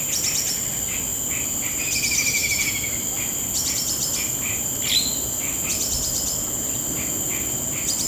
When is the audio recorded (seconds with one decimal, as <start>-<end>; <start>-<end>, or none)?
0.0-8.1